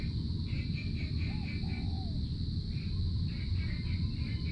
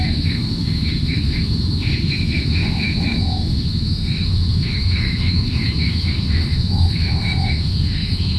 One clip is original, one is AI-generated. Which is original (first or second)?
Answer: first